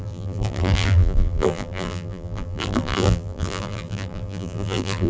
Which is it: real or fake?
fake